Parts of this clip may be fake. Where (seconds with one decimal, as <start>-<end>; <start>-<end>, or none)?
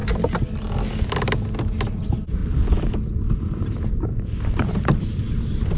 1.9-2.4; 3.4-5.8